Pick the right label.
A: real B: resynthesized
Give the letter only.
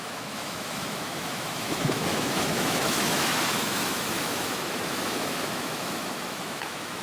B